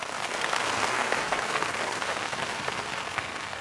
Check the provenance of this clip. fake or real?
fake